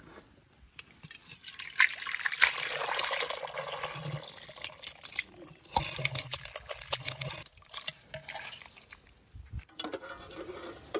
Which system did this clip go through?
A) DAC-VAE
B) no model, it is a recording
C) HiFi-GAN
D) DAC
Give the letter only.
B